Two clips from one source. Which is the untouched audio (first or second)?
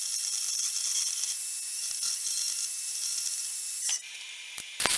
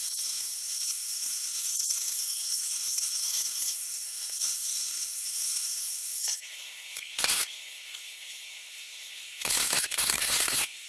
first